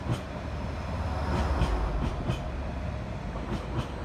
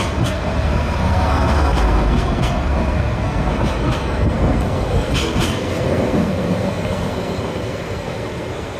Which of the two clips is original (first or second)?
first